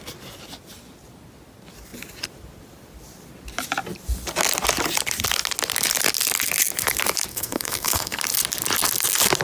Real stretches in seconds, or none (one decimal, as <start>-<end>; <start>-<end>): 0.0-7.3; 8.2-9.4